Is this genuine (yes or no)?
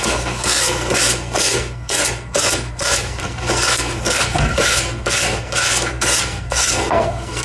no